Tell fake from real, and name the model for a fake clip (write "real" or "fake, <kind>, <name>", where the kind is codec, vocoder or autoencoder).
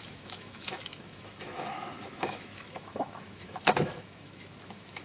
fake, autoencoder, DAC-VAE